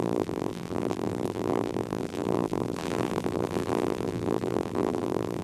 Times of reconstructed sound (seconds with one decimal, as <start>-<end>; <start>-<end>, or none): 0.0-5.4